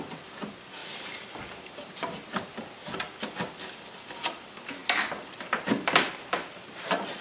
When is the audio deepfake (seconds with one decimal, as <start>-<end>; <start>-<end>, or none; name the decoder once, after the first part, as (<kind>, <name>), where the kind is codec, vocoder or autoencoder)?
0.0-7.2 (vocoder, BigVGAN v2)